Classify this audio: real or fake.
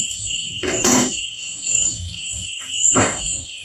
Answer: fake